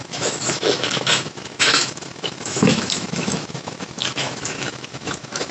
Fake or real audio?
fake